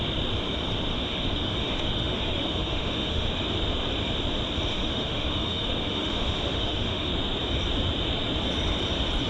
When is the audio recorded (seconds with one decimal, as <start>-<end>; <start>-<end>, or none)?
0.0-0.9; 3.3-4.7; 7.1-9.3